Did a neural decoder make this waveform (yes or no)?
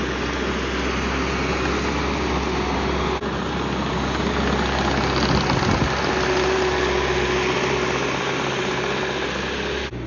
no